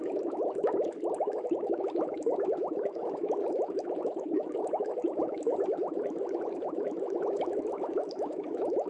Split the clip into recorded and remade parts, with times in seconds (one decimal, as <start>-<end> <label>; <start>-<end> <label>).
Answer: 0.0-8.9 remade